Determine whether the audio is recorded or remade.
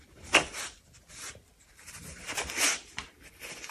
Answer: remade